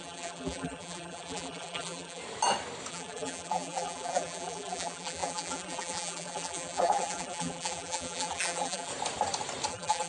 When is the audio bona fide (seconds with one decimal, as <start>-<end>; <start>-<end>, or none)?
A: 2.2-2.9; 8.9-9.7